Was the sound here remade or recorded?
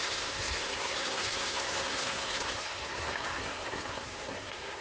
remade